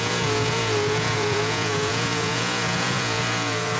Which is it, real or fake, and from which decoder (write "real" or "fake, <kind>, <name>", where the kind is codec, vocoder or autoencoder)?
fake, vocoder, Vocos